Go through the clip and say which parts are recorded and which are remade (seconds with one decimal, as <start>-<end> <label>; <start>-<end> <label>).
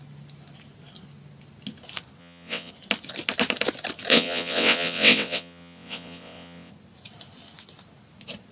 0.0-2.2 recorded; 2.2-2.7 remade; 2.7-4.1 recorded; 4.1-6.7 remade; 6.7-8.5 recorded